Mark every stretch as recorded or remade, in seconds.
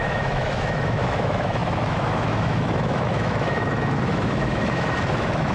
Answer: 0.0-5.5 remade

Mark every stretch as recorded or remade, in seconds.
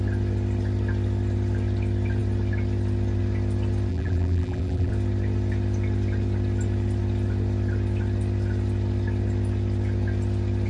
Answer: 0.0-3.9 recorded; 3.9-4.9 remade; 4.9-10.7 recorded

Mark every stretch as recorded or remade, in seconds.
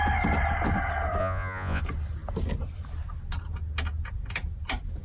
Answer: 0.0-1.2 recorded; 1.2-1.8 remade; 1.8-5.0 recorded